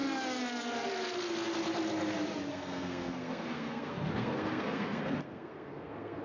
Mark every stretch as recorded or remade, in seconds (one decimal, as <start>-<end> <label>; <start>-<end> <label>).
0.0-2.5 recorded; 2.5-6.2 remade